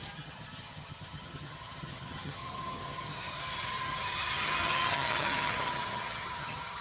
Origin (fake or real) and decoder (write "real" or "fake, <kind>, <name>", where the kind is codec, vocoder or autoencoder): fake, vocoder, HiFi-GAN